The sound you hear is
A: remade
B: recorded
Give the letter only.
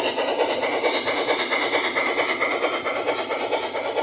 B